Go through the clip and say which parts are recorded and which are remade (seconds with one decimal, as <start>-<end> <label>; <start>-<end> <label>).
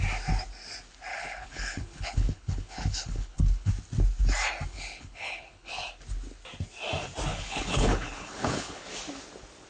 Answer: 0.0-1.1 recorded; 1.1-3.7 remade; 3.7-4.7 recorded; 4.7-5.9 remade; 5.9-7.3 recorded; 7.3-8.9 remade; 8.9-9.7 recorded